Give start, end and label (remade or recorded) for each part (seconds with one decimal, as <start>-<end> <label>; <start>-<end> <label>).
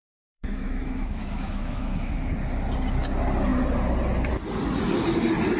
0.0-2.1 remade; 2.1-5.6 recorded